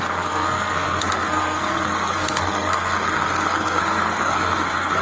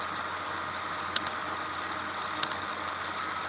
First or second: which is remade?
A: first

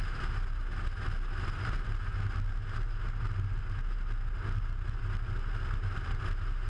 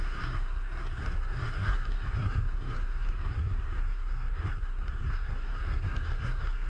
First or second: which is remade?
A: second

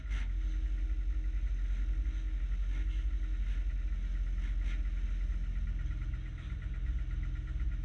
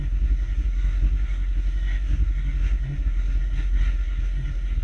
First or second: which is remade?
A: second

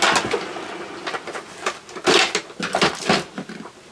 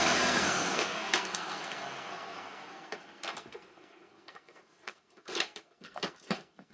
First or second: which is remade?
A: second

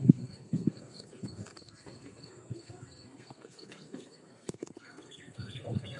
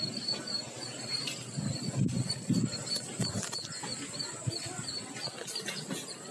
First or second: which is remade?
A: first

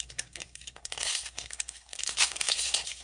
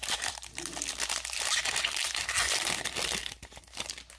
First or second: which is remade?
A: first